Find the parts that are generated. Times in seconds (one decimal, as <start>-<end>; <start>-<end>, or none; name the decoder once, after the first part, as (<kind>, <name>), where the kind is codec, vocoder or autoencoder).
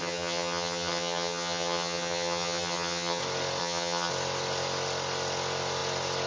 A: 0.0-3.2 (vocoder, HiFi-GAN); 3.6-4.1